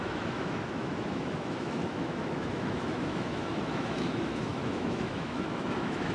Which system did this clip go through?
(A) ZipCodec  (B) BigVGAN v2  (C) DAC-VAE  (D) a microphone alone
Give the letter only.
C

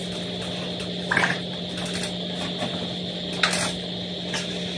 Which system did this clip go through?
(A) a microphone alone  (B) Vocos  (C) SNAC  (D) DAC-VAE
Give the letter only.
A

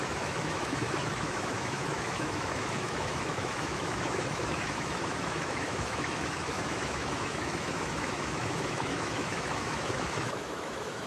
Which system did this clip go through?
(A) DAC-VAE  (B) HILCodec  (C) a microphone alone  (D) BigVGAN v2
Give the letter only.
A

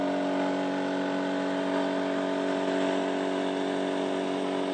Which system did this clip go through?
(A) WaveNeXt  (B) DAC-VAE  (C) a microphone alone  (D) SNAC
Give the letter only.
C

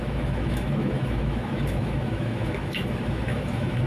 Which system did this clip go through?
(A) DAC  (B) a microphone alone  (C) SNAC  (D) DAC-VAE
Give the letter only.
D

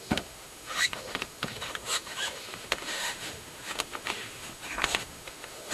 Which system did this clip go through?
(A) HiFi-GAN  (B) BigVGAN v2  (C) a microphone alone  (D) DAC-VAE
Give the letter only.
D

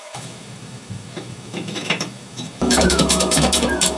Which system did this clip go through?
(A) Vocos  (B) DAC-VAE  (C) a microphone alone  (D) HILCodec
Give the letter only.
B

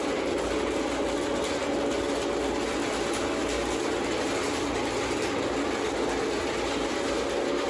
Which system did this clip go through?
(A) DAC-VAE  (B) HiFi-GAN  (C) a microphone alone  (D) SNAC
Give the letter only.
C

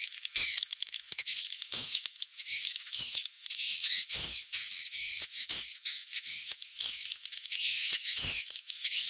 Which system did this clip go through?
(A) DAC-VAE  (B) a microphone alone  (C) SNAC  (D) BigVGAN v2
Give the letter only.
A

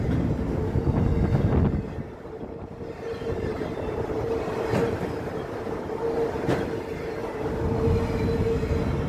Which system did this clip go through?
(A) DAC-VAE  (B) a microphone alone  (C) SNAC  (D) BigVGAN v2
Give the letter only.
B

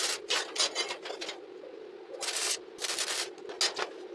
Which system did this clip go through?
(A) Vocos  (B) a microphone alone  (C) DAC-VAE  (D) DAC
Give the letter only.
B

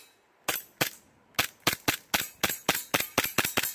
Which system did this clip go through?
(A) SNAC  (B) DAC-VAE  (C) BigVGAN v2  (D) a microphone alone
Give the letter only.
D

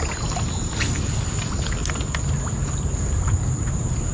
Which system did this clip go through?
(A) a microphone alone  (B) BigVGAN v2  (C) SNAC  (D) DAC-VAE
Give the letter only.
A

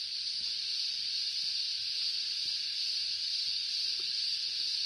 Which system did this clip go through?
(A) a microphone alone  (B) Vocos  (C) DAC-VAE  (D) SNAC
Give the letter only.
A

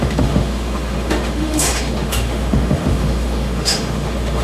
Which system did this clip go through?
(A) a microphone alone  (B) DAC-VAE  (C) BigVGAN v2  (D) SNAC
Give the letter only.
B